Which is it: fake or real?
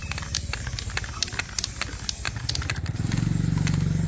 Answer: real